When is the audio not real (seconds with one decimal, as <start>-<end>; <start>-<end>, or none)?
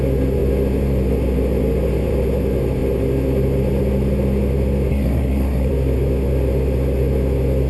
4.9-5.7